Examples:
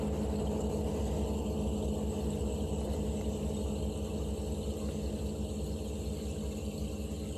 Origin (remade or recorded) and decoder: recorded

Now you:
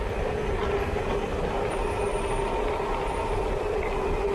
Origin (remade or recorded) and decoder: recorded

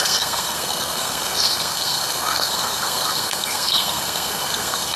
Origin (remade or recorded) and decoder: remade, codec, SNAC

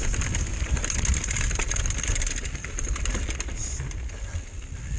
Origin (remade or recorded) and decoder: recorded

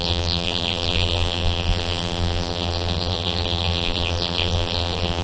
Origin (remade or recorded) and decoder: remade, vocoder, BigVGAN v2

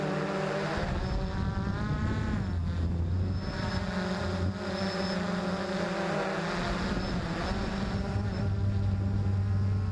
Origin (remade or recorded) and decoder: recorded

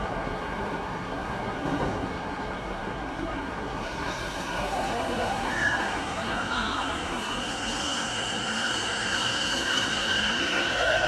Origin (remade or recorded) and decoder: remade, codec, SNAC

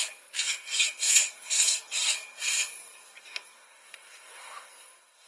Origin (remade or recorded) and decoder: remade, codec, SNAC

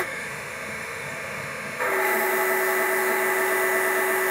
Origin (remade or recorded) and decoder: remade, autoencoder, DAC-VAE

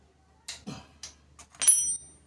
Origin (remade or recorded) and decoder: recorded